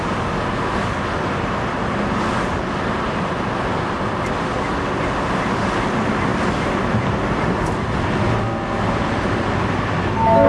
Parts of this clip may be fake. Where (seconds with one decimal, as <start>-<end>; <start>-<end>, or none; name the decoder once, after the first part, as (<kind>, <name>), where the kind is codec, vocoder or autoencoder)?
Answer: none